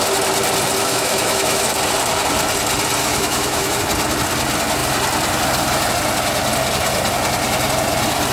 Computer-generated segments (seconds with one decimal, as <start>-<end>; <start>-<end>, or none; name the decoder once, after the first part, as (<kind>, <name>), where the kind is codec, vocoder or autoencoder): 0.8-1.7 (autoencoder, DAC-VAE); 3.0-3.8

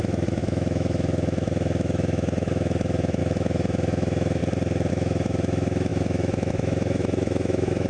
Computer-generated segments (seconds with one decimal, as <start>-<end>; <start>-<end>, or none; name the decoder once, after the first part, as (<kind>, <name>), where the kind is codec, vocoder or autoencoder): 0.0-4.4 (autoencoder, DAC-VAE); 4.9-7.9

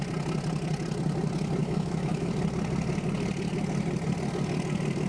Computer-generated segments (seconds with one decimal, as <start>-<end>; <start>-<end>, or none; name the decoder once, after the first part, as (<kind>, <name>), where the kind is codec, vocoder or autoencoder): 1.6-2.3 (autoencoder, DAC-VAE)

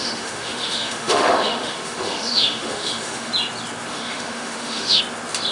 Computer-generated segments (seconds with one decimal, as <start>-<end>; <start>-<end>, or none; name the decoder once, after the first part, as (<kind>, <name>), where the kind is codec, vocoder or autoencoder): 0.0-3.3 (autoencoder, DAC-VAE); 3.9-5.0

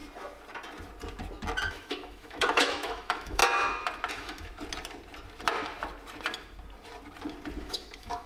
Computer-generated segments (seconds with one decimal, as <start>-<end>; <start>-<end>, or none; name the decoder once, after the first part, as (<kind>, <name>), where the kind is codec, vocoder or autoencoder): 1.7-3.4 (autoencoder, DAC-VAE); 4.1-4.5; 7.6-8.3